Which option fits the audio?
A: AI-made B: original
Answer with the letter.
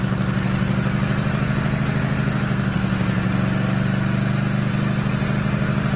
B